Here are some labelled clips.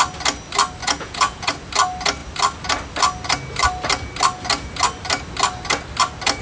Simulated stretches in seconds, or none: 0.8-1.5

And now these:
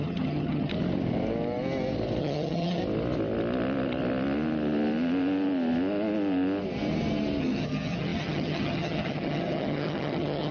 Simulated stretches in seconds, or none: 0.0-0.7; 2.2-2.8; 7.4-10.5

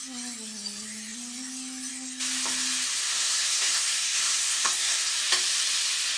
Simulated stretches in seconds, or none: 3.1-5.1

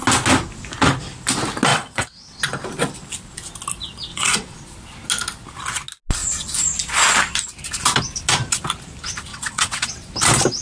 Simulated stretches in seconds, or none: 1.7-2.4; 4.1-4.6; 9.3-9.9

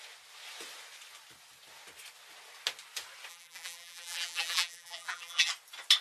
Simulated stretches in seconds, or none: 3.3-5.5